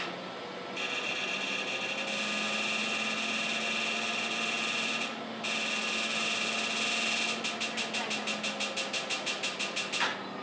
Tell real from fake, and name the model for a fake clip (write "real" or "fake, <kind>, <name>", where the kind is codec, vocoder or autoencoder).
real